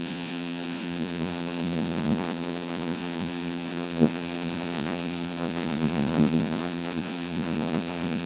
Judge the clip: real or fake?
fake